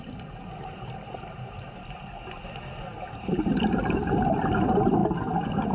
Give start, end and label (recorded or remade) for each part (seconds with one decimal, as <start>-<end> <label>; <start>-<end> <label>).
0.0-5.7 recorded